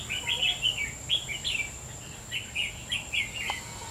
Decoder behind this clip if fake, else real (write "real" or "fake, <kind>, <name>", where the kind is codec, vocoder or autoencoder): real